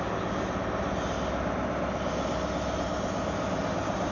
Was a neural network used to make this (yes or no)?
no